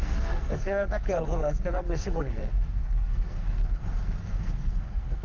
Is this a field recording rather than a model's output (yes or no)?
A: no